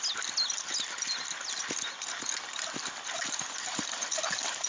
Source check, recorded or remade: recorded